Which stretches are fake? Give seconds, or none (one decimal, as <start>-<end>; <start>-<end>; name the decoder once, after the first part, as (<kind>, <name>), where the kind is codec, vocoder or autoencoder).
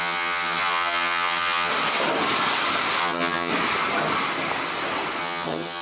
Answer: 0.0-1.7 (vocoder, HiFi-GAN); 3.0-3.5; 5.2-5.8